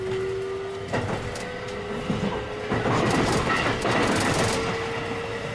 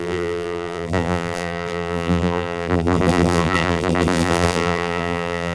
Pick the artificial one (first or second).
second